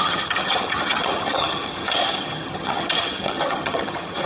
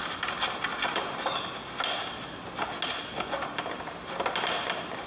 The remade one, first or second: first